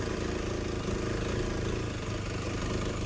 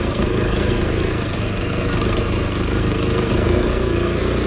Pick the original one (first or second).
first